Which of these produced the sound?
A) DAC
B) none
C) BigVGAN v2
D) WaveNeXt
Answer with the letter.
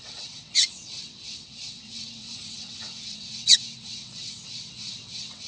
D